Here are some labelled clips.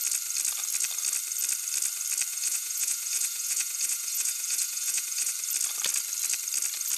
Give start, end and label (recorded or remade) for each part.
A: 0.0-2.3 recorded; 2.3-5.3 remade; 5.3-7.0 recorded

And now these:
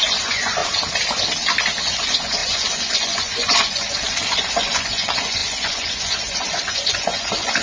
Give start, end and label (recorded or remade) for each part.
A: 0.0-0.6 remade; 0.6-1.8 recorded; 1.8-7.6 remade

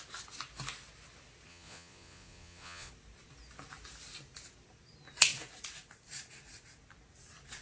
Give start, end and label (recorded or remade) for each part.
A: 0.0-1.5 recorded; 1.5-2.9 remade; 2.9-7.6 recorded

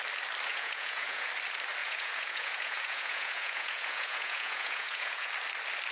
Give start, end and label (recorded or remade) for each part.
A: 0.0-0.5 recorded; 0.5-1.3 remade; 1.3-1.8 recorded; 1.8-5.3 remade; 5.3-5.9 recorded

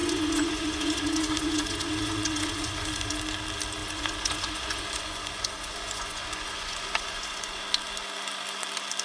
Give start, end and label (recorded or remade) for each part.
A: 0.0-3.2 remade; 3.2-3.8 recorded; 3.8-7.6 remade; 7.6-9.0 recorded

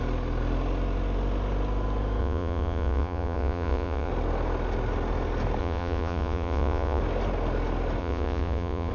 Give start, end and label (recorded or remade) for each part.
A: 0.0-2.2 recorded; 2.2-4.1 remade; 4.1-5.6 recorded; 5.6-7.0 remade; 7.0-8.0 recorded; 8.0-8.9 remade

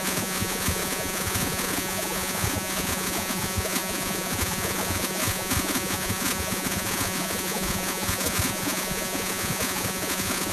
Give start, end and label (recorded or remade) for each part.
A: 0.0-10.5 remade

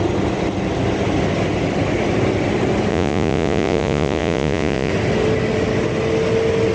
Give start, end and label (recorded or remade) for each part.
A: 0.0-2.9 recorded; 2.9-4.9 remade; 4.9-6.7 recorded